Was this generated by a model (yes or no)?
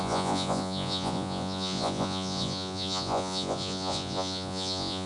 yes